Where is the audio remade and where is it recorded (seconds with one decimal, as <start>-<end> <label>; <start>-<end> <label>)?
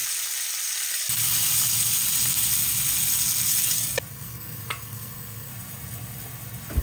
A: 0.0-4.1 recorded; 4.1-5.5 remade; 5.5-6.8 recorded